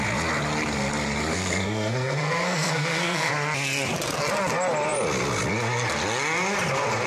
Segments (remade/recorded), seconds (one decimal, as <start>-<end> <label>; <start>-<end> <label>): 0.0-1.3 recorded; 1.3-3.3 remade; 3.3-7.1 recorded